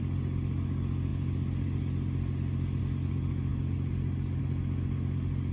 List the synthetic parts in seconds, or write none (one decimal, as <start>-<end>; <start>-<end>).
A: none